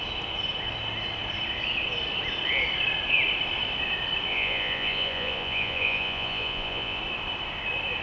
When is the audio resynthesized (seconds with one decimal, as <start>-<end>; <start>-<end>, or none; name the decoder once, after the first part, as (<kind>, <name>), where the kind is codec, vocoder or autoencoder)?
4.3-7.0 (vocoder, Vocos)